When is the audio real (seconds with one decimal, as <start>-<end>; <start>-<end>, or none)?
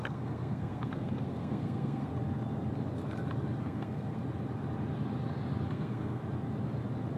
2.1-3.6; 4.2-5.7; 6.2-7.2